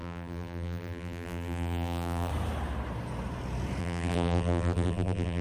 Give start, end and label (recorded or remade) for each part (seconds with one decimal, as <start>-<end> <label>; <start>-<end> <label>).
0.0-2.3 remade; 2.3-3.8 recorded; 3.8-5.4 remade